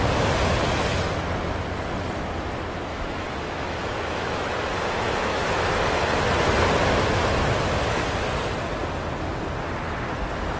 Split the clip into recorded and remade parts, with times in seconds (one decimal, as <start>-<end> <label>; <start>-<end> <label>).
0.0-2.9 recorded; 2.9-5.6 remade; 5.6-10.6 recorded